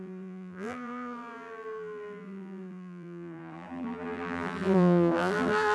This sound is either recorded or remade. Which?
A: remade